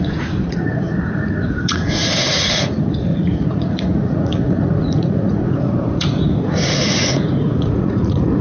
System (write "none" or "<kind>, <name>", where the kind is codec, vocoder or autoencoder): vocoder, Vocos